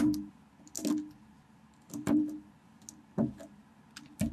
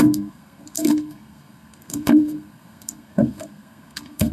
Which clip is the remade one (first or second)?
second